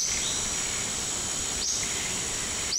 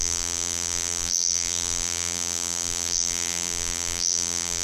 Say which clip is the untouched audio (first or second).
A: first